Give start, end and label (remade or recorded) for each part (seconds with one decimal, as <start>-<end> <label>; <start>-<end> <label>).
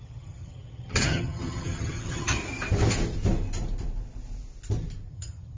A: 0.0-2.4 remade; 2.4-5.1 recorded; 5.1-5.6 remade